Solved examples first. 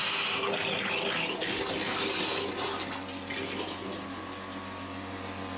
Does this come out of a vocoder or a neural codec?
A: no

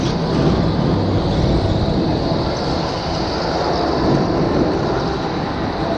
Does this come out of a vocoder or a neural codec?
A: no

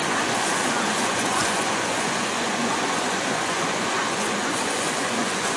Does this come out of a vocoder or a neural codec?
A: yes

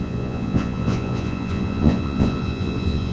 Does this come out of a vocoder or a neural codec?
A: yes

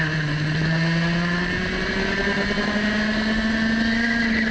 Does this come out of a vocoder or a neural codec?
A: no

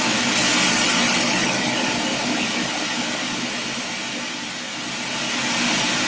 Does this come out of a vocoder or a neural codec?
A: no